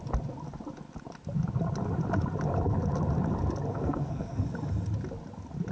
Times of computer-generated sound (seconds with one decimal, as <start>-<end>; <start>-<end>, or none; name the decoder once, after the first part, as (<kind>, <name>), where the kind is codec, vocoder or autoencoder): 3.7-4.4 (codec, SNAC)